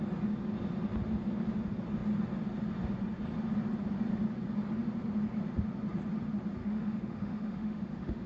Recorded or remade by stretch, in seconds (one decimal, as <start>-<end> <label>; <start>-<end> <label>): 0.0-6.6 recorded; 6.6-8.3 remade